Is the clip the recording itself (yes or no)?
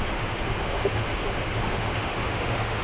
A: no